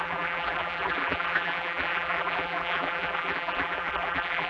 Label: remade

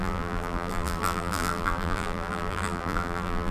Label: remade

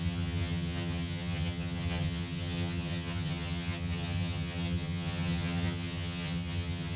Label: remade